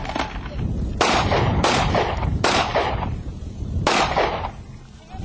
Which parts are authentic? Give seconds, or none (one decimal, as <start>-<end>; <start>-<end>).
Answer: 0.0-0.9; 4.0-5.2